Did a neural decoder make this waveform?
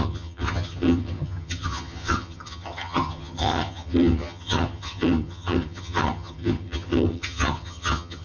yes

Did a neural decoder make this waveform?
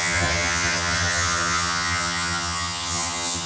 yes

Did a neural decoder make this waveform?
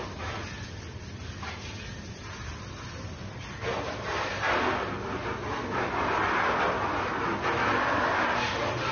no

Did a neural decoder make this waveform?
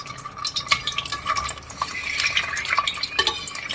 no